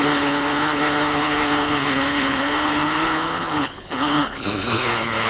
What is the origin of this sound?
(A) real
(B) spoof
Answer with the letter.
B